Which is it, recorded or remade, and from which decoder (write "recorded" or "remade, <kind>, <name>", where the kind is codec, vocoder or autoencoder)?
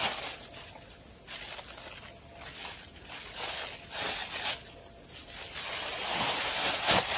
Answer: recorded